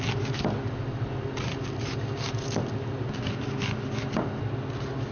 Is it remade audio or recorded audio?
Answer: recorded